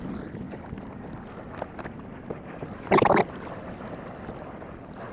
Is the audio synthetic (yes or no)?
no